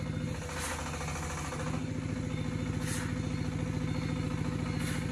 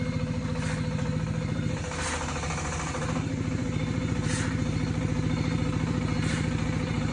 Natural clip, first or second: first